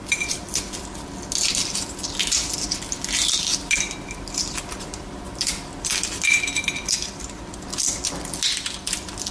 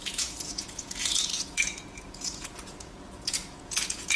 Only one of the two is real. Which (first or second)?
first